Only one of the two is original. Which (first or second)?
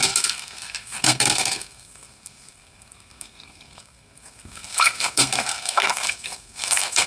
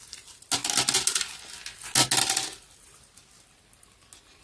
second